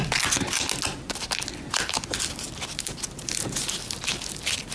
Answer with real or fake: real